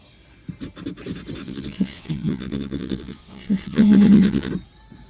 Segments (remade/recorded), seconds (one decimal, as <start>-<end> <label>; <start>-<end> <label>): 0.0-1.4 recorded; 1.4-4.5 remade; 4.5-5.1 recorded